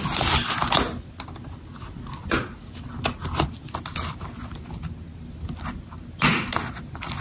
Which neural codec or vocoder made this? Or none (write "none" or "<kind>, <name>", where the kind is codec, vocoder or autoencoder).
none